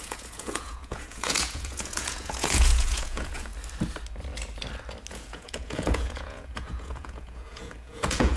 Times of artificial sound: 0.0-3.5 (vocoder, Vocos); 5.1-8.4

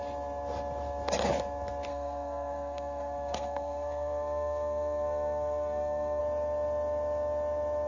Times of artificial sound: 1.9-6.2 (codec, SNAC)

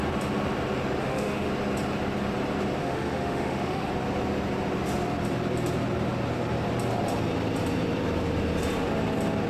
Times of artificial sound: 1.0-1.5 (autoencoder, DAC-VAE); 2.8-3.9

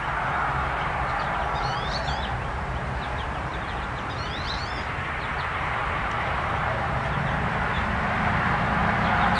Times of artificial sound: 1.7-3.0 (vocoder, BigVGAN v2); 3.5-4.7; 8.8-9.4

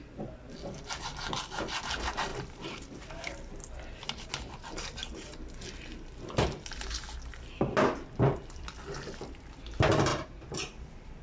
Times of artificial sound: 2.3-3.3 (vocoder, BigVGAN v2); 10.1-10.7

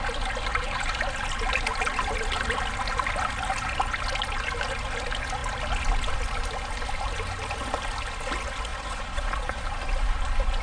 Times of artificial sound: 8.7-9.6 (vocoder, Vocos)

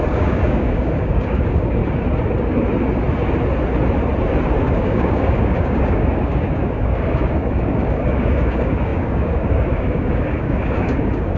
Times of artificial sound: 0.0-1.8 (codec, DAC); 4.6-11.4